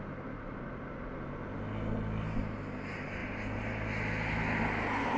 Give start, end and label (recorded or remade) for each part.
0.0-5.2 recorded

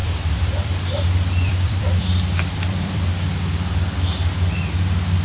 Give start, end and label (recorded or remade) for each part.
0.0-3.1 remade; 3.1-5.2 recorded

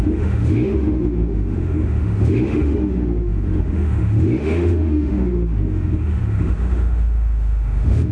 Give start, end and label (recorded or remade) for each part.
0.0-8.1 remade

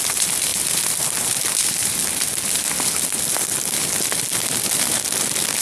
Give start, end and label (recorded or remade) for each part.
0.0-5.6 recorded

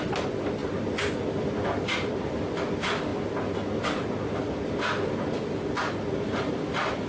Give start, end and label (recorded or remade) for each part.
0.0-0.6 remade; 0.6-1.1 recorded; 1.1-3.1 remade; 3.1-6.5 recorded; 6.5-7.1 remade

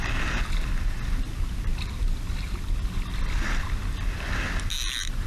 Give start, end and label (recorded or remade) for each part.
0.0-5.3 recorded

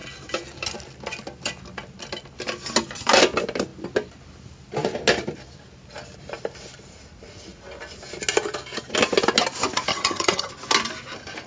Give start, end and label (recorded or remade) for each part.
0.0-9.9 recorded; 9.9-10.5 remade; 10.5-11.5 recorded

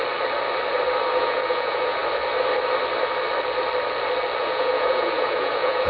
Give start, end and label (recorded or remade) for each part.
0.0-1.1 recorded; 1.1-2.0 remade; 2.0-4.4 recorded; 4.4-5.9 remade